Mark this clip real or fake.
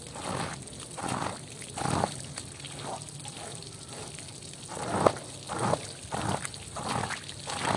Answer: real